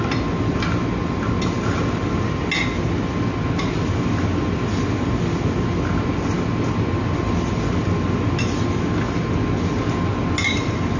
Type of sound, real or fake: real